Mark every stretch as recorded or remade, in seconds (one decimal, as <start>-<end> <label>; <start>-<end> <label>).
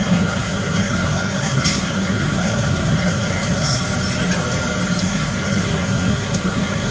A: 0.0-3.8 remade; 3.8-5.0 recorded; 5.0-6.9 remade